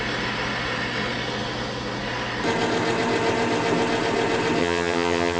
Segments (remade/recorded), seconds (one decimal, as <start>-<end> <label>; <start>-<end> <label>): 0.0-4.6 recorded; 4.6-5.4 remade